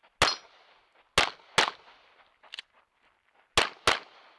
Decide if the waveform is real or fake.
real